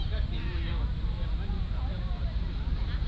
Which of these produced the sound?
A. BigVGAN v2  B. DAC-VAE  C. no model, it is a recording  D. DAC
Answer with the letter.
C